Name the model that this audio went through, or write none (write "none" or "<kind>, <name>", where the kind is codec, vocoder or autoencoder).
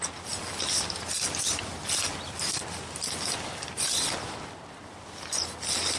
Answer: none